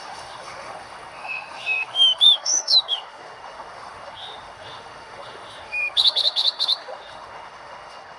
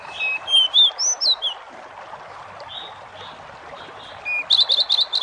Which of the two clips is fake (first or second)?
first